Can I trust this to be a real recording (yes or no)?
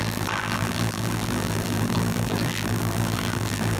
no